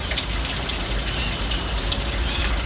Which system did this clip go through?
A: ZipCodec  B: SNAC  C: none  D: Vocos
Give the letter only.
C